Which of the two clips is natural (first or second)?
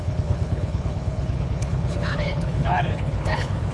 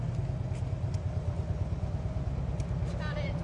second